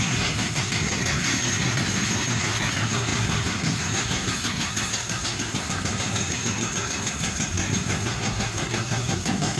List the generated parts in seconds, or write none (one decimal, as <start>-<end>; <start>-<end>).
0.0-9.6